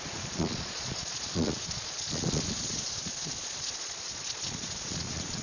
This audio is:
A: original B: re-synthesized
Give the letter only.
B